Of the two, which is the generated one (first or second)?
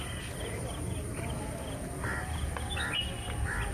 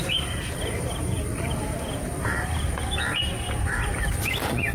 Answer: second